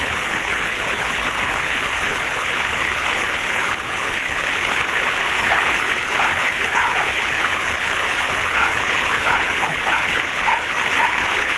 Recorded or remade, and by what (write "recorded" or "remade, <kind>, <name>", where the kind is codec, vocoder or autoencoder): remade, codec, HILCodec